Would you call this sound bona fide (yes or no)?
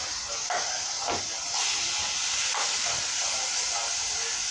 yes